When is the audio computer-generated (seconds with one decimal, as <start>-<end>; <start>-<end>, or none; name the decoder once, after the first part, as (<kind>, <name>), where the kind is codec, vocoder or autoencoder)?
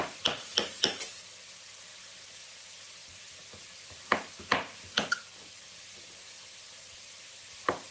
none